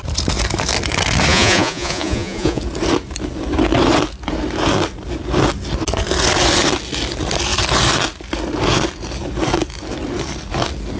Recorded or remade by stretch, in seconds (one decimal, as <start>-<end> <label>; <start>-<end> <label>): 0.0-1.3 recorded; 1.3-2.6 remade; 2.6-11.0 recorded